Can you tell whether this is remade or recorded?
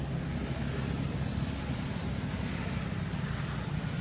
recorded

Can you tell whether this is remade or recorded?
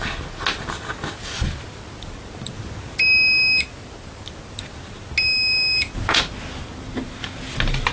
recorded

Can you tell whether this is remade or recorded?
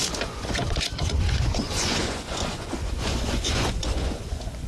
remade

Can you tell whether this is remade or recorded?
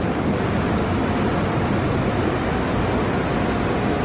recorded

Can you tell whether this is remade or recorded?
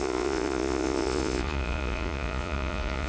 remade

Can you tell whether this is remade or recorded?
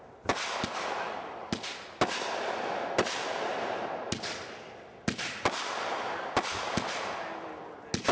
recorded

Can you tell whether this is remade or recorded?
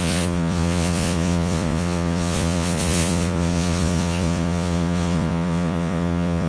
remade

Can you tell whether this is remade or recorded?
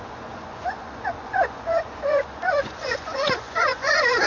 remade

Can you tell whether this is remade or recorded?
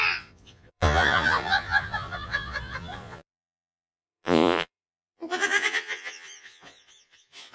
remade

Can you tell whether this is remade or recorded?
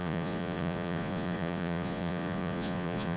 remade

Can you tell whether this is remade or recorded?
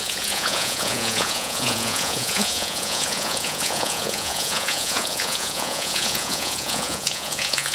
remade